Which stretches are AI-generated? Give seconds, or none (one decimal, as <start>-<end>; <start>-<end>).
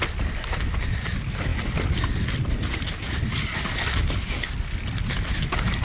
none